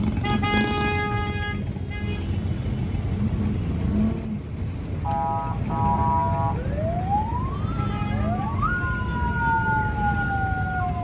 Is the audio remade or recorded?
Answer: recorded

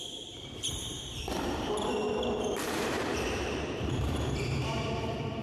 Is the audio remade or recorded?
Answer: remade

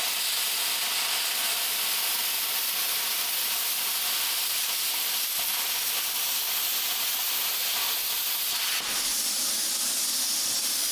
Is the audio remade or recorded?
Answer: recorded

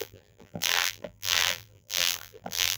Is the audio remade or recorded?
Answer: remade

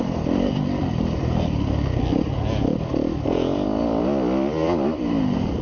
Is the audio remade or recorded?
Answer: remade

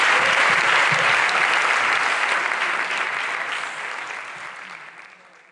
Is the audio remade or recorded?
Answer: remade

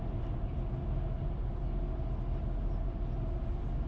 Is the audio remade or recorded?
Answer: recorded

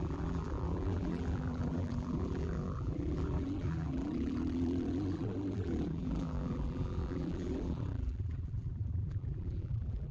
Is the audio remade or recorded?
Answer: remade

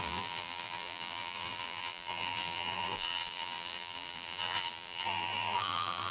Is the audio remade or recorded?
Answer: remade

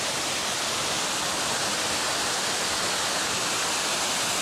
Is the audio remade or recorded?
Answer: recorded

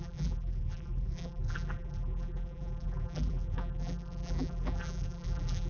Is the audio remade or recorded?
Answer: remade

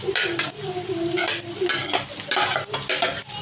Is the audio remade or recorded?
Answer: remade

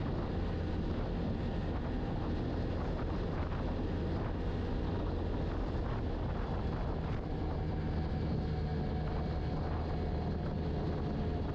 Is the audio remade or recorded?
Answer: recorded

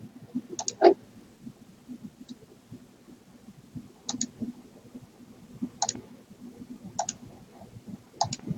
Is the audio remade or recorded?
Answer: recorded